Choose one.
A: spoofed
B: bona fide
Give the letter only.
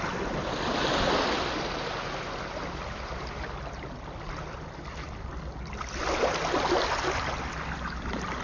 B